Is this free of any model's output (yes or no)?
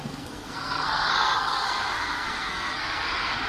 no